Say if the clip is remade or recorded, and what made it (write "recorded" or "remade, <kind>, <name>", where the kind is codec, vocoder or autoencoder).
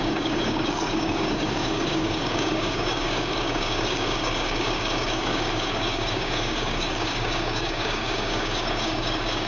remade, codec, DAC